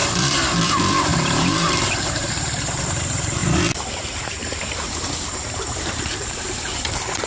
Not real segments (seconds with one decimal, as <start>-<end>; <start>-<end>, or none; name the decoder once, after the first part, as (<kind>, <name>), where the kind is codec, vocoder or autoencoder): 0.0-3.4 (vocoder, BigVGAN v2); 3.9-7.3